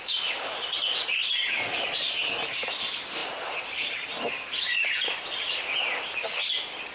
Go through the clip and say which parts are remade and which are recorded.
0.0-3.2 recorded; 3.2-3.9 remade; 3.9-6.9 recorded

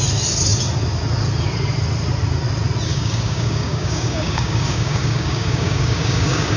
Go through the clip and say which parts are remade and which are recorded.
0.0-2.9 recorded; 2.9-6.6 remade

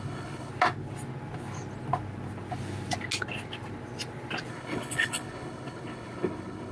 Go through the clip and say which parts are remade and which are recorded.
0.0-0.5 remade; 0.5-4.5 recorded; 4.5-6.7 remade

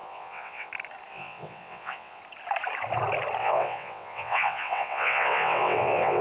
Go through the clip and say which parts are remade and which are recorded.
0.0-0.7 remade; 0.7-1.1 recorded; 1.1-2.2 remade; 2.2-3.4 recorded; 3.4-6.2 remade

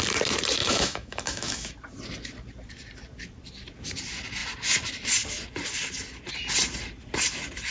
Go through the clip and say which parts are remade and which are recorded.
0.0-0.6 recorded; 0.6-1.7 remade; 1.7-7.7 recorded